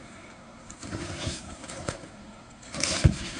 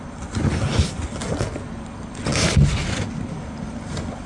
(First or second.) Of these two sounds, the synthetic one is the first